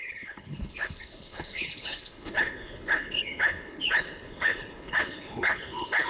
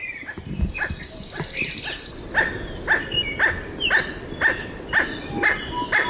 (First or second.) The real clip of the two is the second